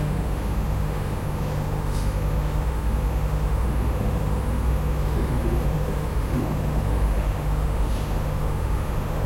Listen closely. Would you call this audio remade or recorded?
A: remade